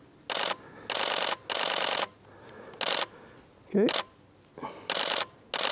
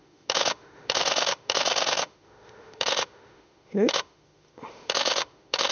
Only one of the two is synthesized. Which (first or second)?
second